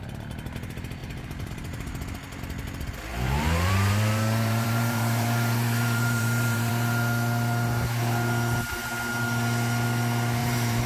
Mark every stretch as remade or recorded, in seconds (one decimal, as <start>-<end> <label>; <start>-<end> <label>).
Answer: 0.0-1.0 recorded; 1.0-1.9 remade; 1.9-3.1 recorded; 3.1-6.7 remade; 6.7-10.4 recorded; 10.4-10.9 remade